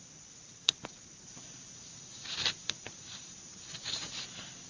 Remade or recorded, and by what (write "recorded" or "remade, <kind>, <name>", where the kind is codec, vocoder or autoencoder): remade, vocoder, BigVGAN v2